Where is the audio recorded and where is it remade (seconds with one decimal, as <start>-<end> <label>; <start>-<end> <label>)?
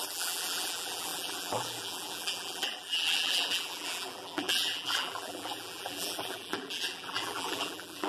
0.0-8.1 remade